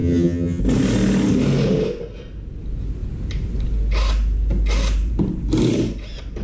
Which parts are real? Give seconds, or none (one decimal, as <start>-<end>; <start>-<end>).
0.6-6.4